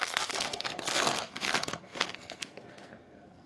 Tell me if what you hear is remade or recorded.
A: remade